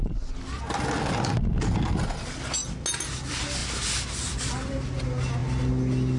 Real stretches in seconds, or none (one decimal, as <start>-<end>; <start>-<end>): 0.0-6.2